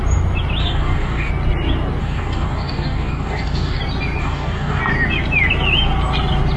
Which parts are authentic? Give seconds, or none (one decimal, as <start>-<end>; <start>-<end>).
0.0-0.6; 1.3-2.0; 3.8-4.2; 4.8-6.6